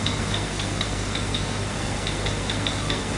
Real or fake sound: fake